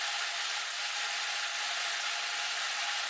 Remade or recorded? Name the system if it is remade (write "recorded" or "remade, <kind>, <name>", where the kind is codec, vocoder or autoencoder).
recorded